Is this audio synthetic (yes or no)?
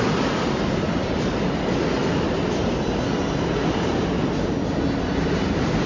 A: no